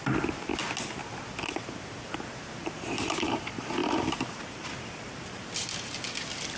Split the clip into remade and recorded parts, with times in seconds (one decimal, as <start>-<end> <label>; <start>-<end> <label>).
0.0-6.6 recorded